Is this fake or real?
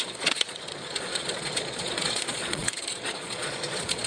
fake